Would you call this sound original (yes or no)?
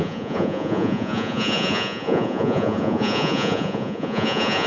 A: no